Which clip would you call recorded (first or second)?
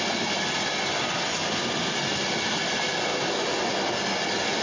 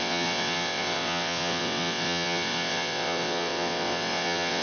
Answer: first